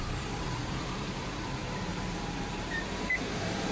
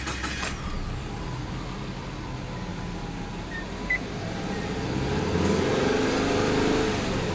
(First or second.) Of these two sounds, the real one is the second